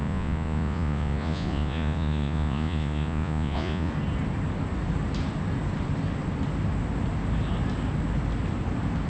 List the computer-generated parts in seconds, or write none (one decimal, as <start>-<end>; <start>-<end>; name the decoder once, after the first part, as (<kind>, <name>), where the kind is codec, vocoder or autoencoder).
0.0-3.9 (vocoder, Vocos)